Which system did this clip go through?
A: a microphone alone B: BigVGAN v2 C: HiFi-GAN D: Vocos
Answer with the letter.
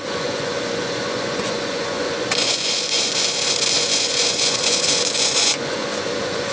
D